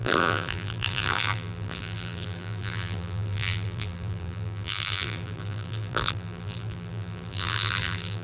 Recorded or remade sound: remade